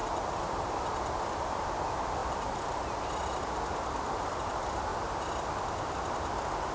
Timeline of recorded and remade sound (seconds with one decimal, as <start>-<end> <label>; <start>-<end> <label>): 0.0-6.7 recorded